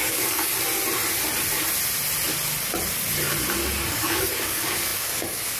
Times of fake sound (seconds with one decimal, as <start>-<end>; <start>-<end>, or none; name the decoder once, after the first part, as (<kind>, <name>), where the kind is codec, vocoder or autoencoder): 0.0-0.5 (codec, DAC); 3.9-5.6